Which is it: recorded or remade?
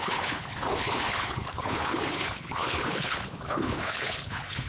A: remade